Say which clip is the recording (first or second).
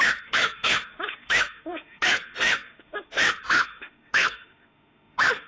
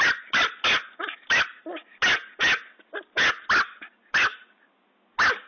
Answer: second